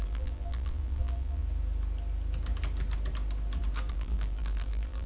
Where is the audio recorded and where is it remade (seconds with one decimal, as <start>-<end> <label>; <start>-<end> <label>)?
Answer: 0.0-1.4 remade; 1.4-3.9 recorded; 3.9-5.1 remade